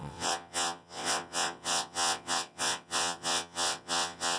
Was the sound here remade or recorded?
remade